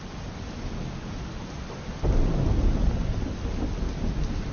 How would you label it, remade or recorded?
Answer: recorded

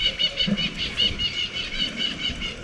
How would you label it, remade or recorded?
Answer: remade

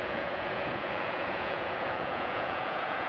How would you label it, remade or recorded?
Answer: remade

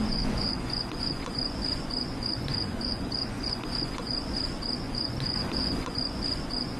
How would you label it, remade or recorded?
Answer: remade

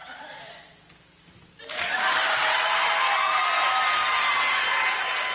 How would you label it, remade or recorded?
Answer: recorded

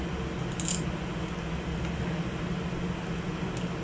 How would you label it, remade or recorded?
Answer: recorded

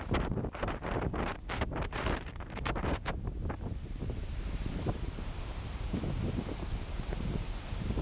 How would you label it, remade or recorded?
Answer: remade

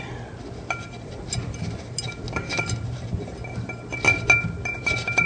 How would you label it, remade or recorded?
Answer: recorded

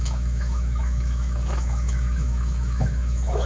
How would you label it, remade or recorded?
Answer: remade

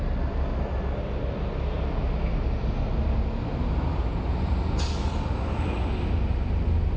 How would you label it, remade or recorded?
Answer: recorded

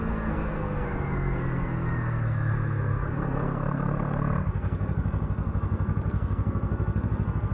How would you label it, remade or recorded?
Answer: remade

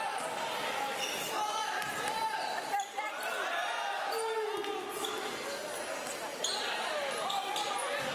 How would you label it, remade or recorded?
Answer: recorded